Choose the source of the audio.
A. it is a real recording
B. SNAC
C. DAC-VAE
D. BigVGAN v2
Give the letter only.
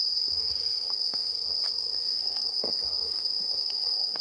B